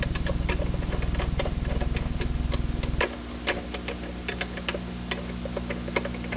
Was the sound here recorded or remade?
recorded